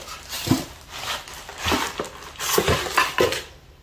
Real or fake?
real